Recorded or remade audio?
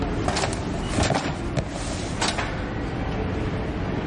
recorded